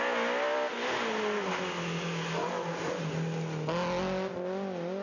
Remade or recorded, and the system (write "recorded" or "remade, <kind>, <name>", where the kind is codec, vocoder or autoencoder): recorded